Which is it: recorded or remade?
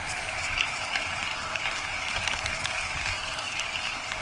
remade